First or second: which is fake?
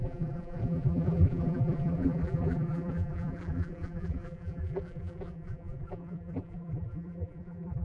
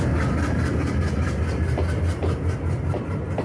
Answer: first